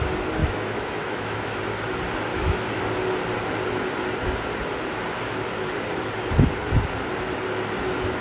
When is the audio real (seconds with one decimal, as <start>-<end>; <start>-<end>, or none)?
0.0-0.4; 1.6-2.3; 2.8-8.2